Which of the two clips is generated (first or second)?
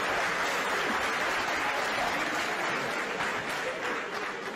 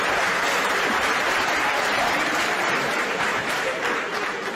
second